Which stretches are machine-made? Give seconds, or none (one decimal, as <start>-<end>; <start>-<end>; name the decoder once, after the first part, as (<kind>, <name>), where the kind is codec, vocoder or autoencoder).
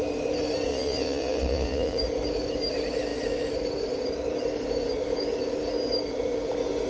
0.7-2.0 (vocoder, Vocos)